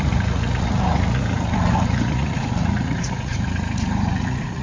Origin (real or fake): fake